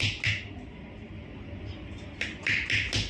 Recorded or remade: recorded